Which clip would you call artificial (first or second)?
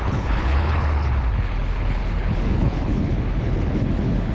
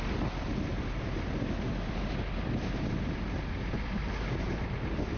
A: first